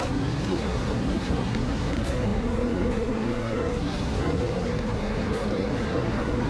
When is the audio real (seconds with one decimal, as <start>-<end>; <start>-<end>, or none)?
none